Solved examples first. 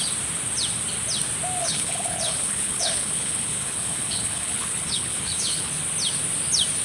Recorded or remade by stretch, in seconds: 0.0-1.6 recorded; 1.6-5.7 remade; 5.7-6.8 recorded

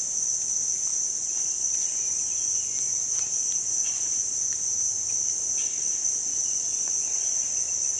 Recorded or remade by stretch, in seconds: 0.0-1.9 recorded; 1.9-4.9 remade; 4.9-6.3 recorded; 6.3-7.6 remade; 7.6-8.0 recorded

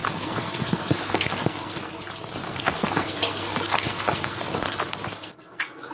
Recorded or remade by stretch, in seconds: 0.0-1.9 remade; 1.9-2.4 recorded; 2.4-4.5 remade; 4.5-5.1 recorded; 5.1-5.9 remade

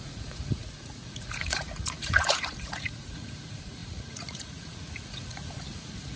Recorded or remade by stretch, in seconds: 0.0-6.2 remade

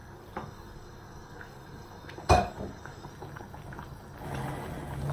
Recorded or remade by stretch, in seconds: 0.0-3.1 remade; 3.1-5.1 recorded

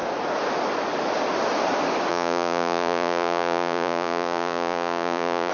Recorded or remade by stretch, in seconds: 0.0-2.1 recorded; 2.1-5.5 remade